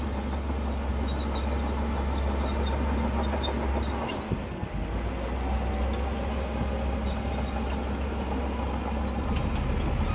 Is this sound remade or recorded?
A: recorded